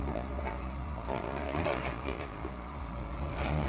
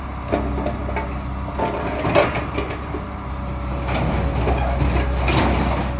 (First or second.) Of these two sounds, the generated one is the first